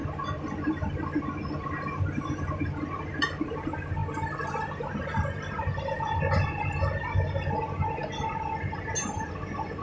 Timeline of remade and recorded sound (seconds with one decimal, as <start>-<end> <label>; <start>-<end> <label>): 0.0-9.8 recorded